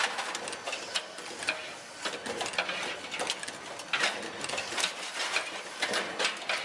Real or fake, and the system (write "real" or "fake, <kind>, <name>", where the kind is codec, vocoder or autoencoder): real